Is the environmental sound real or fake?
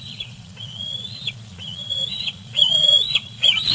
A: fake